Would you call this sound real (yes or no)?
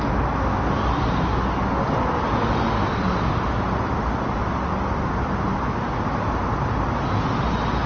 yes